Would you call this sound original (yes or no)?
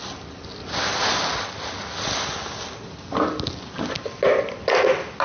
yes